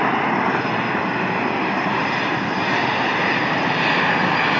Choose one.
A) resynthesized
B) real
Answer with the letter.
B